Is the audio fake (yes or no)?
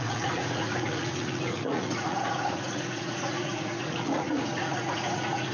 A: yes